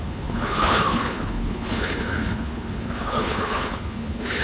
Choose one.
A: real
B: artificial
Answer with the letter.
B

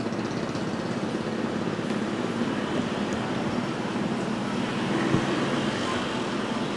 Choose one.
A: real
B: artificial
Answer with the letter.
A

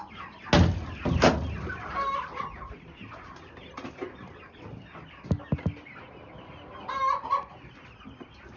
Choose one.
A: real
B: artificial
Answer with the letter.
A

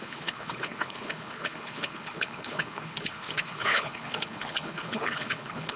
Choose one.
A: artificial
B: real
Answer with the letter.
A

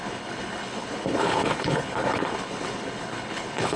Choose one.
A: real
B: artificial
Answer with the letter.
B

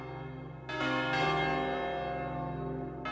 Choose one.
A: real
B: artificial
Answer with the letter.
A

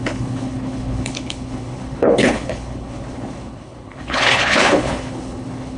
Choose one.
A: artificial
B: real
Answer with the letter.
A